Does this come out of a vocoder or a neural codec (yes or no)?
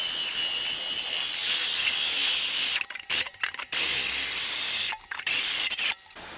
no